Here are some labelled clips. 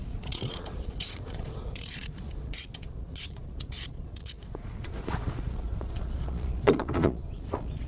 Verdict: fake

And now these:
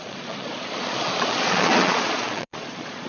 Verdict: fake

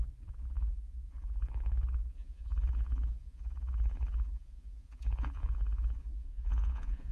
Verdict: fake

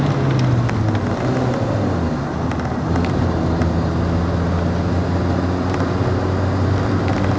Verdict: real